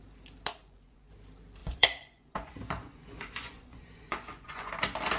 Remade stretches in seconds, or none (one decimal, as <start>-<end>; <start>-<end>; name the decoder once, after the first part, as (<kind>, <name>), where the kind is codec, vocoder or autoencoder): 0.5-1.1 (vocoder, Vocos); 1.6-4.7